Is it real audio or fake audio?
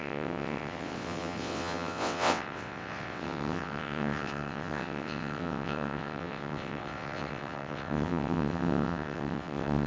fake